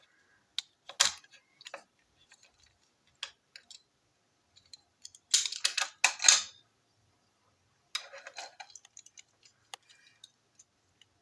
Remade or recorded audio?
recorded